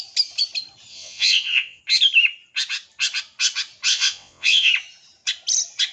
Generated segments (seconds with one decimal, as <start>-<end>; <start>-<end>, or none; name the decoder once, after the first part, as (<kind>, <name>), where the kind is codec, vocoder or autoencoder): 0.9-1.8 (vocoder, WaveNeXt); 3.9-4.7